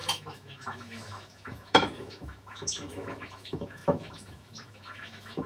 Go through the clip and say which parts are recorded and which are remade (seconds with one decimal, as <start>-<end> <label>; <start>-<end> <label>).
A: 0.0-5.5 remade